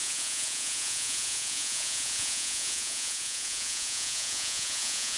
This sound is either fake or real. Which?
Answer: fake